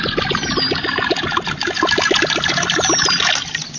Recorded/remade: recorded